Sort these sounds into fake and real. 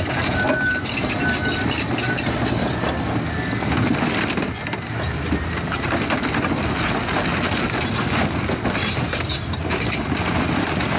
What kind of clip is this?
real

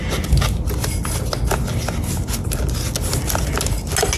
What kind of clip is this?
real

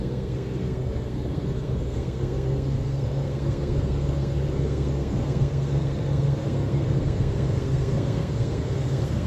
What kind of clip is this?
fake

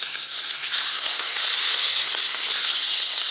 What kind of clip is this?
fake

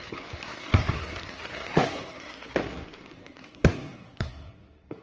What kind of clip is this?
fake